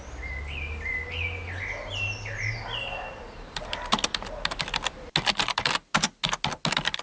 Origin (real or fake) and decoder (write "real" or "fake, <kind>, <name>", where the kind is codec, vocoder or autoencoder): real